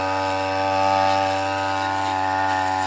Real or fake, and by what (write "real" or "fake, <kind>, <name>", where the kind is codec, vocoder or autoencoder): real